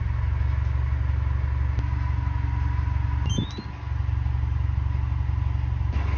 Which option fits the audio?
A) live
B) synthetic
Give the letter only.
A